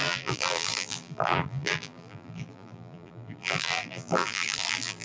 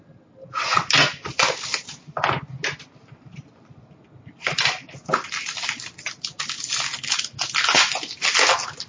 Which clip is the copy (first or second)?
first